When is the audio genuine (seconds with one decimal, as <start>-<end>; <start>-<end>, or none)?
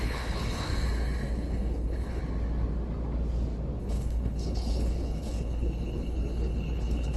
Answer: 0.7-1.3; 2.2-3.8